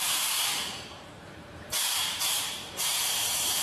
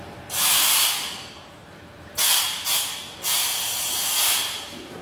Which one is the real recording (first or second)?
second